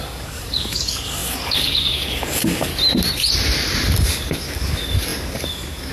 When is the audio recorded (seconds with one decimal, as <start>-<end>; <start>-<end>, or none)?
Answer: 2.7-4.0